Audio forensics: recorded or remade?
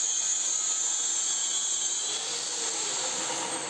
recorded